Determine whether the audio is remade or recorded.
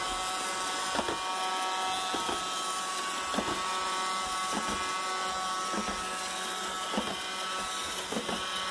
recorded